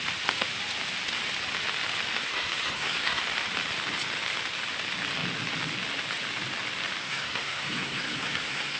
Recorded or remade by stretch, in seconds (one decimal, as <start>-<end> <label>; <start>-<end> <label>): 0.0-2.2 recorded; 2.2-3.2 remade; 3.2-7.0 recorded; 7.0-8.8 remade